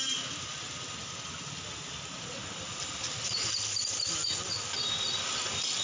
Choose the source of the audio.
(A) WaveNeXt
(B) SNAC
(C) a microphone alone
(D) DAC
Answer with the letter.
C